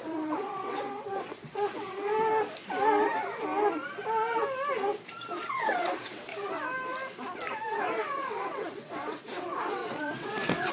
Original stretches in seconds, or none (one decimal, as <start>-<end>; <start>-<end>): 2.1-5.4; 6.3-7.7